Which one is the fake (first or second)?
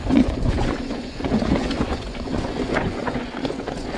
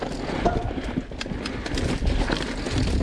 first